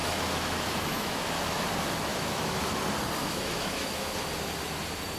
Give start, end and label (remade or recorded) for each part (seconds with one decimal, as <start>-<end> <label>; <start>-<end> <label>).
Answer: 0.0-1.6 remade; 1.6-2.1 recorded; 2.1-2.7 remade; 2.7-3.2 recorded; 3.2-4.1 remade; 4.1-5.2 recorded